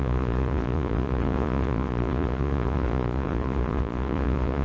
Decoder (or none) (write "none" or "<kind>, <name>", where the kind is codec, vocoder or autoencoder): vocoder, Vocos